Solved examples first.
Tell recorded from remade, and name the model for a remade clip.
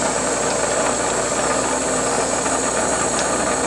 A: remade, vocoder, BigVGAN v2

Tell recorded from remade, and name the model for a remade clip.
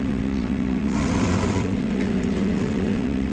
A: remade, vocoder, WaveNeXt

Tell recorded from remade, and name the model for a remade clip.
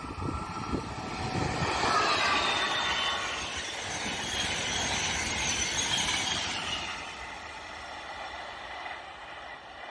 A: recorded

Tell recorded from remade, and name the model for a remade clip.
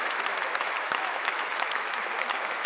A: remade, autoencoder, DAC-VAE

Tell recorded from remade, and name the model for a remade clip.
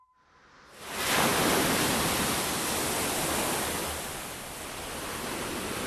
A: recorded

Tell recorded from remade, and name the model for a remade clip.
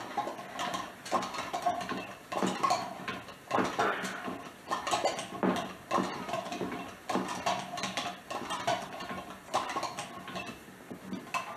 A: recorded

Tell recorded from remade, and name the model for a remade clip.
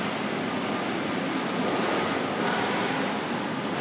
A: recorded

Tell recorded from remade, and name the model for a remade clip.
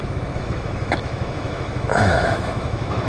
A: remade, autoencoder, DAC-VAE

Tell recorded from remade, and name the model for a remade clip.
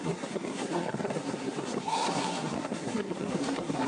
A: remade, codec, SNAC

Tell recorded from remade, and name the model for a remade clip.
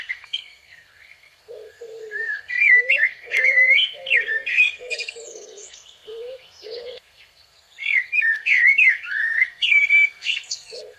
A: remade, codec, SNAC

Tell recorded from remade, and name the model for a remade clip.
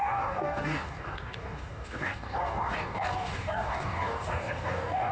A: remade, codec, DAC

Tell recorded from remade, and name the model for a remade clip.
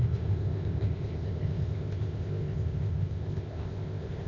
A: remade, codec, ZipCodec